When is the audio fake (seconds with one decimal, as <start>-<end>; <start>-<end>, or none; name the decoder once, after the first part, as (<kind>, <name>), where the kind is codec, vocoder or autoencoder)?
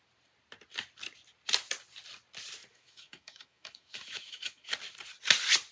2.7-4.7 (autoencoder, DAC-VAE)